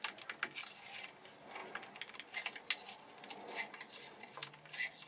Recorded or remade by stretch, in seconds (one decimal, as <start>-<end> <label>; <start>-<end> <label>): 0.0-5.1 recorded